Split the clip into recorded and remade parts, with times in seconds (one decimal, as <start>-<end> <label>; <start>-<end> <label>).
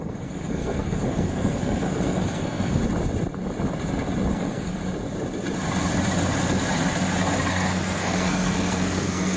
0.0-2.8 remade; 2.8-4.3 recorded; 4.3-4.8 remade; 4.8-7.5 recorded; 7.5-9.4 remade